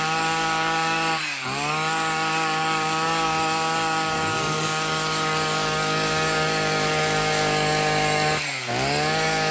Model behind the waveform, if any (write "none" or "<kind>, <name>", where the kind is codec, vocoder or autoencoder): codec, DAC